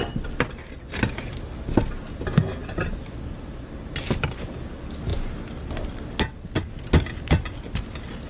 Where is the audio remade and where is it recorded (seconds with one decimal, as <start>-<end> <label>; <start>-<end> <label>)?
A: 0.0-8.3 recorded